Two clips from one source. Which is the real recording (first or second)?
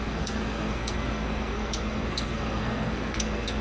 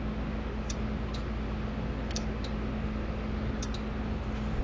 second